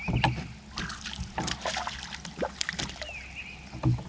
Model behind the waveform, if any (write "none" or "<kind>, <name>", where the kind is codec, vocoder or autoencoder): none